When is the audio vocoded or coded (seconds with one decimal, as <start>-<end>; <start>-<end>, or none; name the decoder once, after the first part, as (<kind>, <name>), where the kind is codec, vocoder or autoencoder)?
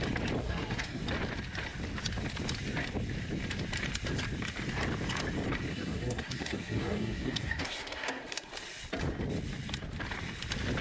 0.4-1.0 (codec, SNAC); 5.7-8.5